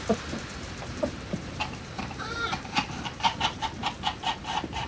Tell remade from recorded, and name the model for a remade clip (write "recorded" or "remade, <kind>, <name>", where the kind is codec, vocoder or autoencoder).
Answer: remade, vocoder, BigVGAN v2